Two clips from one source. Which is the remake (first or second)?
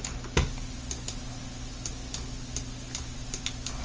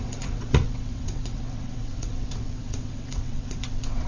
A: second